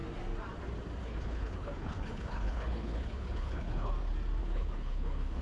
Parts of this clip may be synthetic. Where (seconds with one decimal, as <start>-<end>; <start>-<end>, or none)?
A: 1.0-3.9; 4.4-5.4